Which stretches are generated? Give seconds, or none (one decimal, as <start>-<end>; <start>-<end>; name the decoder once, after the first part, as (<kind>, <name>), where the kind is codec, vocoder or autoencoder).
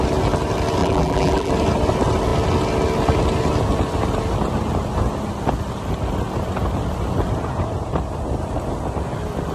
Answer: 0.8-1.5 (vocoder, BigVGAN v2)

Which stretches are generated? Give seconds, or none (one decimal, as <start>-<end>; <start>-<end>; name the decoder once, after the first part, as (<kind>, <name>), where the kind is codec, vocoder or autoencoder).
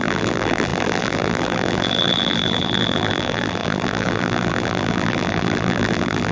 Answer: 0.0-6.3 (vocoder, BigVGAN v2)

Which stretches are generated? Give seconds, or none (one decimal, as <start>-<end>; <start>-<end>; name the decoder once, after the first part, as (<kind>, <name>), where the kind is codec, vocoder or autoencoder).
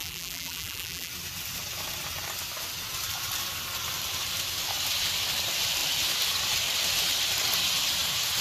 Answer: 0.0-1.1 (vocoder, BigVGAN v2)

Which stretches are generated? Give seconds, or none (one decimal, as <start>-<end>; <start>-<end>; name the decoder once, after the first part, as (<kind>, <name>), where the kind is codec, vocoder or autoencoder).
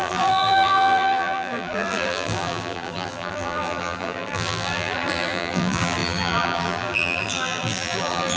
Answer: 0.0-8.4 (vocoder, BigVGAN v2)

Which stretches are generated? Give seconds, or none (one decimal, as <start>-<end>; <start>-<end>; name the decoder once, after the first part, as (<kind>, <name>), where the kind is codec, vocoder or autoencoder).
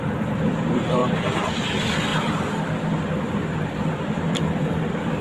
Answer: 0.0-2.1 (vocoder, BigVGAN v2); 3.5-5.2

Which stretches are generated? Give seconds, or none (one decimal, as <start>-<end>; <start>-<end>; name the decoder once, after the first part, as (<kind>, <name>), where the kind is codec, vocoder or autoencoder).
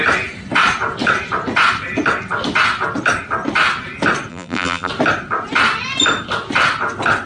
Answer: 4.3-4.9 (vocoder, BigVGAN v2)